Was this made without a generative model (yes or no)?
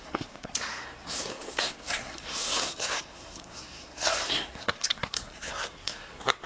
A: no